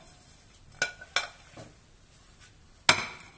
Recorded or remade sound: recorded